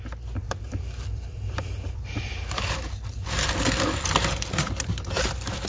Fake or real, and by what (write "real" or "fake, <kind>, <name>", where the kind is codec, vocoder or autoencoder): fake, vocoder, BigVGAN v2